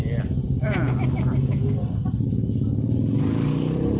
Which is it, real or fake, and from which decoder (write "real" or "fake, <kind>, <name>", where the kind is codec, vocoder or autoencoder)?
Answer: real